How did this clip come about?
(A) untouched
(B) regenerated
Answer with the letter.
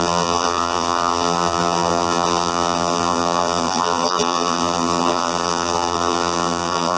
B